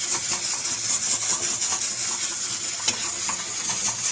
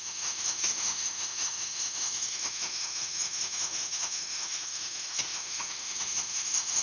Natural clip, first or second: first